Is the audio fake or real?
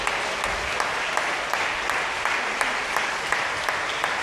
real